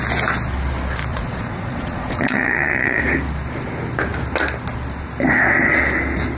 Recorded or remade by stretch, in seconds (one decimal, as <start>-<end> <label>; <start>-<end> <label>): 0.0-1.1 recorded; 1.1-3.0 remade; 3.0-6.4 recorded